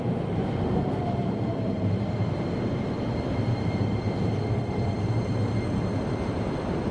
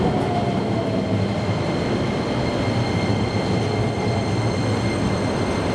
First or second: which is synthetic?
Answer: first